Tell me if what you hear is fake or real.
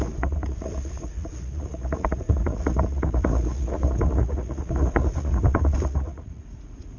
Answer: fake